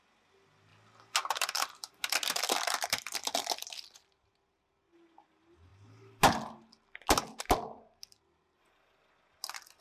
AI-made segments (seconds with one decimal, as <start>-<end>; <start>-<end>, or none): none